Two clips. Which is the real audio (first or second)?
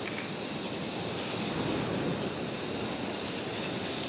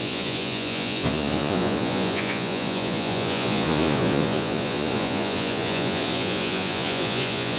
first